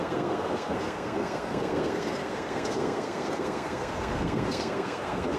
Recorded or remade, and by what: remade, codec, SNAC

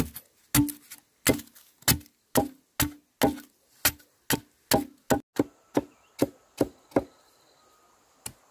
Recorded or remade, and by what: recorded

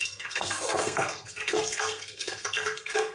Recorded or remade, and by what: remade, codec, SNAC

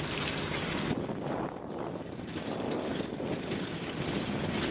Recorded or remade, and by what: recorded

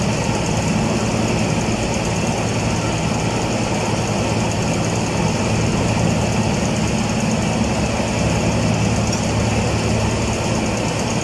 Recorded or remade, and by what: recorded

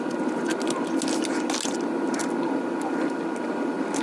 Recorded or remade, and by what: recorded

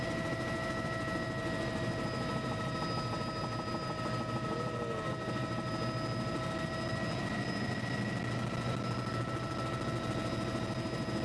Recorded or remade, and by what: recorded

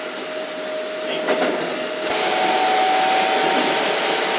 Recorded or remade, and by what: recorded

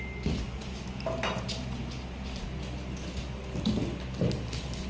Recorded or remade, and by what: recorded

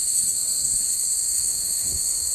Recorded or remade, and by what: remade, codec, SNAC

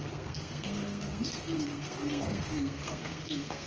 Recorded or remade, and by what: remade, codec, SNAC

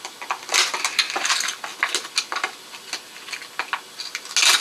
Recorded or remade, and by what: recorded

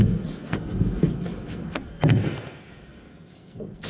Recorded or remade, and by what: remade, codec, SNAC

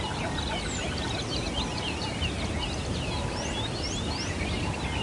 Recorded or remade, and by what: recorded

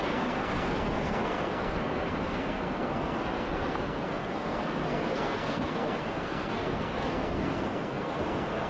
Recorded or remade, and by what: remade, codec, SNAC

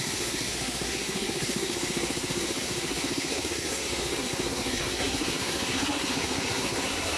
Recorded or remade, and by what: remade, codec, SNAC